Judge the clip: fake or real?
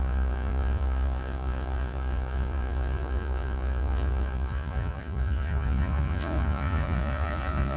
fake